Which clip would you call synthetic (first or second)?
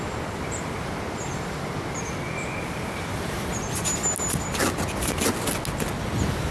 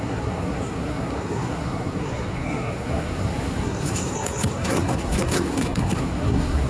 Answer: second